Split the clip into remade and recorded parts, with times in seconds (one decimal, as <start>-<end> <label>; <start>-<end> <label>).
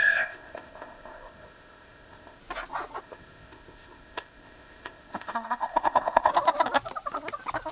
0.0-2.4 remade; 2.4-3.0 recorded; 3.0-6.3 remade; 6.3-7.7 recorded